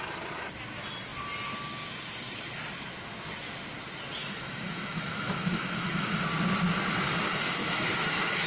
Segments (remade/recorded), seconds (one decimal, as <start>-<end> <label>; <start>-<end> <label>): 0.0-4.2 recorded; 4.2-6.2 remade; 6.2-7.6 recorded; 7.6-8.5 remade